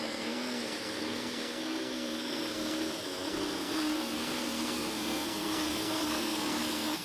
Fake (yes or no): yes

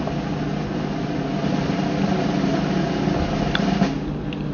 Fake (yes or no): no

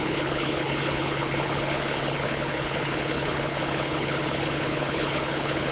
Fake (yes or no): yes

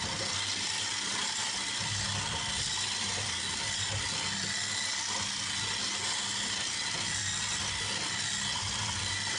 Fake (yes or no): no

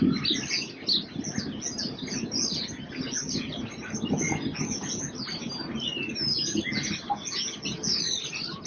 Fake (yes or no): no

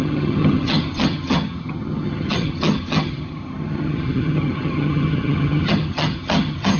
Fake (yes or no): yes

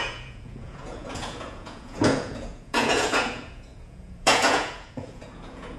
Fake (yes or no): yes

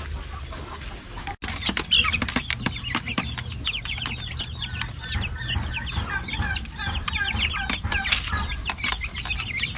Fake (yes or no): no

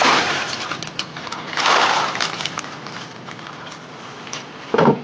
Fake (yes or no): no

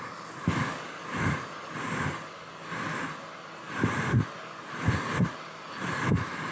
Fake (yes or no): no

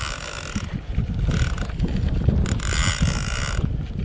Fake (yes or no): no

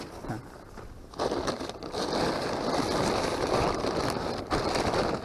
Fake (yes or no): no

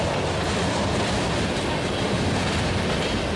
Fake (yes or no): no